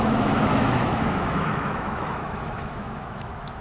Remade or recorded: remade